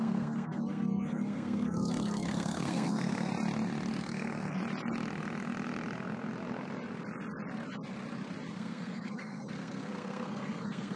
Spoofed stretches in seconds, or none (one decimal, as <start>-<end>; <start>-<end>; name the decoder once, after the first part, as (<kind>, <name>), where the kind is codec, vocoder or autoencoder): 0.0-3.3 (codec, SNAC); 4.0-4.6; 8.5-11.0